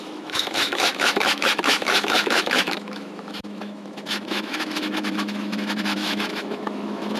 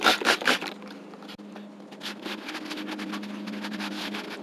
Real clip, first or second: second